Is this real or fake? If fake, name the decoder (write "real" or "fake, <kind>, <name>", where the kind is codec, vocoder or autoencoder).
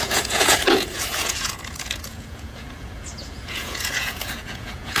fake, vocoder, Vocos